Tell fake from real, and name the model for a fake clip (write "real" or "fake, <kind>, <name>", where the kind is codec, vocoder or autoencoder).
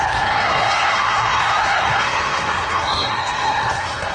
fake, codec, SNAC